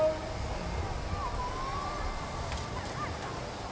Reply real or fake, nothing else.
real